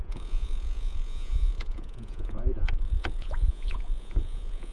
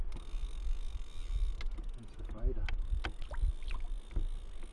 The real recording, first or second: second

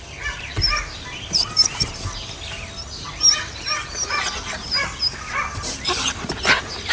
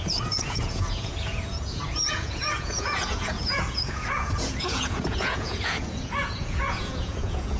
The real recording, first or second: first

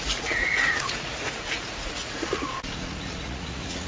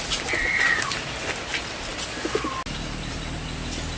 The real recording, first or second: second